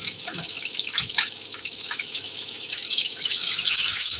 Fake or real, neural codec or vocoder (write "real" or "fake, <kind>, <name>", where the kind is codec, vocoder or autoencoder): fake, autoencoder, DAC-VAE